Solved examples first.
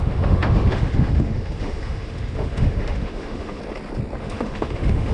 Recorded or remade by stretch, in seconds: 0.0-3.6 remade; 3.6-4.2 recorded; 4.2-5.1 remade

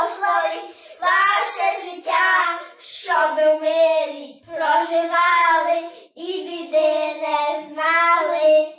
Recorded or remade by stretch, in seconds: 0.0-0.8 remade; 0.8-2.0 recorded; 2.0-8.8 remade